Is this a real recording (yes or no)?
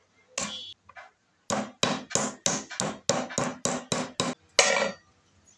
yes